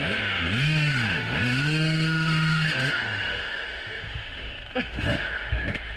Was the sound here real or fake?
fake